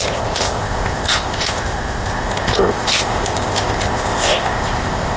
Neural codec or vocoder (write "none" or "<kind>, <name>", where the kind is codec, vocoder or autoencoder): codec, ZipCodec